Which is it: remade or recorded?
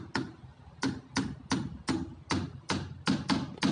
recorded